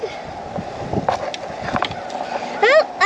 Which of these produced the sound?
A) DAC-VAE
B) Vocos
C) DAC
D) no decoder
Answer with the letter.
D